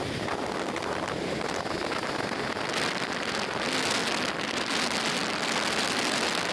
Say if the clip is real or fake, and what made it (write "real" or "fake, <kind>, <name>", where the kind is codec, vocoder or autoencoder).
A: real